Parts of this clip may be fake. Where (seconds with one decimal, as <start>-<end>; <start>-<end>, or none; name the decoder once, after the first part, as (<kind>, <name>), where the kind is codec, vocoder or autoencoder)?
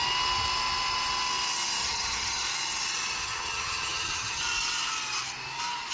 1.8-2.5 (vocoder, HiFi-GAN); 3.2-4.4